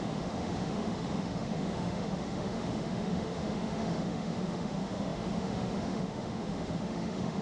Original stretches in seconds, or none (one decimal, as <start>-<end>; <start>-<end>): none